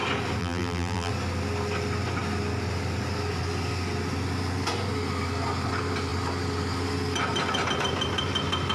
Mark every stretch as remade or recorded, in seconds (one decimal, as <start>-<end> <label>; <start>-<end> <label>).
0.0-0.4 recorded; 0.4-1.1 remade; 1.1-8.7 recorded